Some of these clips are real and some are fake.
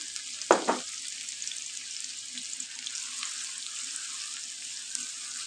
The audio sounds real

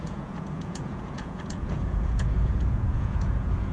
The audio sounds fake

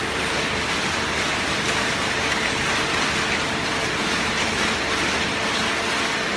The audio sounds real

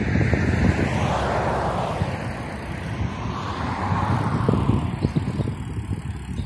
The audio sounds real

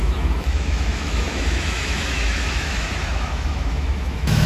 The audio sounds fake